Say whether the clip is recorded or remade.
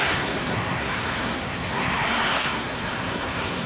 remade